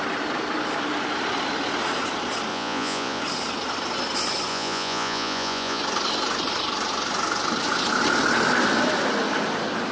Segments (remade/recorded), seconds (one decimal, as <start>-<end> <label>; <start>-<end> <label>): 0.0-2.5 recorded; 2.5-3.2 remade; 3.2-4.5 recorded; 4.5-5.8 remade; 5.8-9.9 recorded